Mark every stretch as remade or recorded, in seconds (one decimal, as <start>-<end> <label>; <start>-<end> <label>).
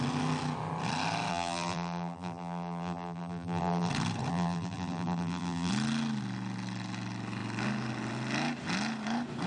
0.0-1.3 recorded; 1.3-3.9 remade; 3.9-4.3 recorded; 4.3-5.7 remade; 5.7-9.5 recorded